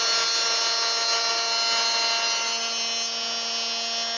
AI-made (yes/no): no